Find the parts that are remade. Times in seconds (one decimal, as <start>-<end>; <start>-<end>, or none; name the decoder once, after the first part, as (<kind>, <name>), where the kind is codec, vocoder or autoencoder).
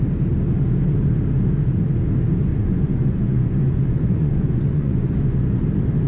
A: 2.5-5.6 (vocoder, Vocos)